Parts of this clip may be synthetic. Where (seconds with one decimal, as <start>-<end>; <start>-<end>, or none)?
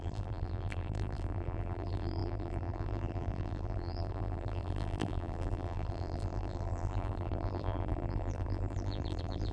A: 0.0-9.5